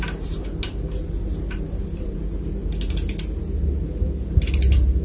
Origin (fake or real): real